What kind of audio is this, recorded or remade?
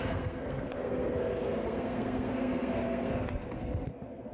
remade